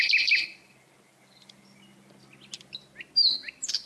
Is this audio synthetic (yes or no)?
no